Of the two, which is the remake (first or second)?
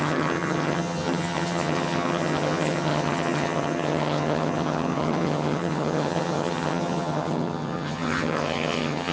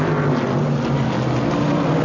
first